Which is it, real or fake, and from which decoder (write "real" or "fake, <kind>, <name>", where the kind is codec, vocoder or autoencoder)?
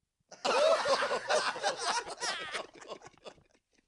real